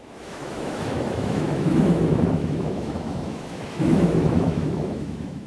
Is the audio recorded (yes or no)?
no